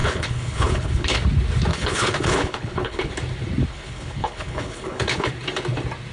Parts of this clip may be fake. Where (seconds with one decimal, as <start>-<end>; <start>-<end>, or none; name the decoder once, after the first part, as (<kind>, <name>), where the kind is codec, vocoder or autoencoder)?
0.0-1.2 (codec, HILCodec); 1.7-3.1; 3.7-5.3